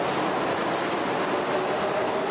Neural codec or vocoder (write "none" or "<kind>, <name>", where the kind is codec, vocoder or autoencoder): none